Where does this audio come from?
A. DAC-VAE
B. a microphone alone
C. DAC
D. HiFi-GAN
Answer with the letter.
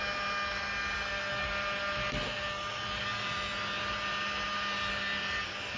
B